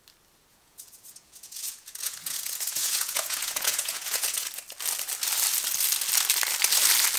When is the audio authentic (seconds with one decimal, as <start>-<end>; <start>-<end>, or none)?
0.0-0.5; 4.5-7.2